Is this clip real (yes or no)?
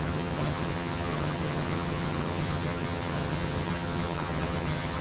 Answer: no